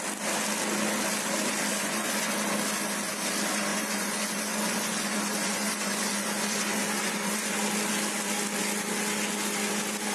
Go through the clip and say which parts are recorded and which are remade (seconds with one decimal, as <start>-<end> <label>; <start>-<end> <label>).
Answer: 0.0-1.7 recorded; 1.7-2.3 remade; 2.3-3.7 recorded; 3.7-7.5 remade; 7.5-10.1 recorded